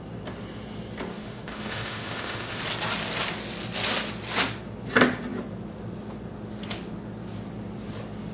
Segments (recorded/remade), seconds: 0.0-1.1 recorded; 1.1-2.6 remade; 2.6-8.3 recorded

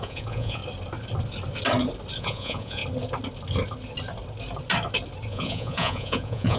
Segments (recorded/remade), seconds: 0.0-0.6 remade; 0.6-2.2 recorded; 2.2-2.8 remade; 2.8-5.3 recorded; 5.3-6.6 remade

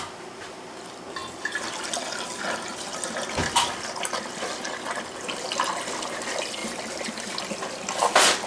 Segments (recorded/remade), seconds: 0.0-8.5 recorded

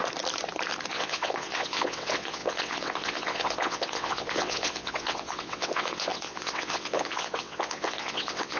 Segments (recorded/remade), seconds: 0.0-0.9 recorded; 0.9-8.6 remade

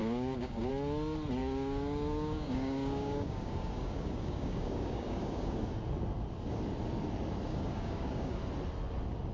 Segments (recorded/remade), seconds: 0.0-0.7 remade; 0.7-1.4 recorded; 1.4-5.6 remade; 5.6-7.5 recorded; 7.5-8.4 remade; 8.4-9.3 recorded

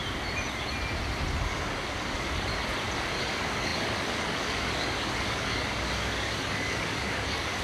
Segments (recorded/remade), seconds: 0.0-1.4 recorded; 1.4-2.5 remade; 2.5-3.1 recorded; 3.1-7.6 remade